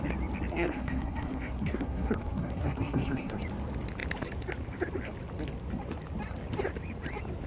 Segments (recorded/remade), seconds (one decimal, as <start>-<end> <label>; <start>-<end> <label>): 0.0-0.5 recorded; 0.5-3.4 remade; 3.4-7.5 recorded